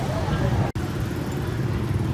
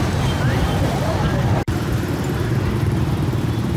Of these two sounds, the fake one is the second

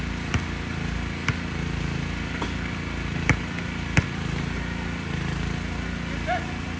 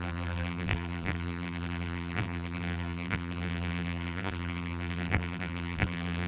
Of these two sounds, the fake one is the second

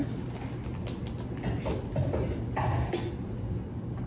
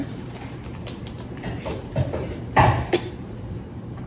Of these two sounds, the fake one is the second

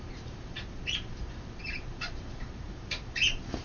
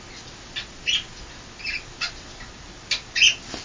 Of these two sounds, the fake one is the first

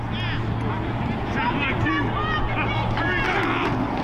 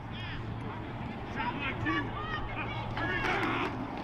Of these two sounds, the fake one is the second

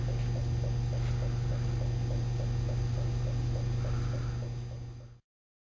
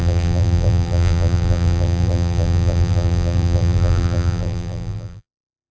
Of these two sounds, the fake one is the second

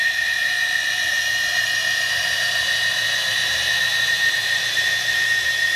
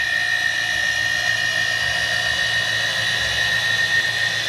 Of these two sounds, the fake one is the first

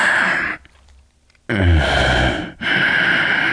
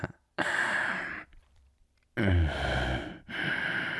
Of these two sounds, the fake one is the second